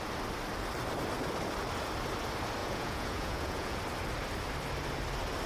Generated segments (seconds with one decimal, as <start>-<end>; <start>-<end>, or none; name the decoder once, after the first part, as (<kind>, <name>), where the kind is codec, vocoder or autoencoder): 2.6-3.8 (vocoder, Vocos)